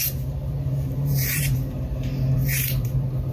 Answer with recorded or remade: remade